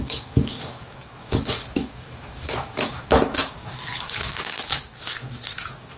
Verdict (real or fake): fake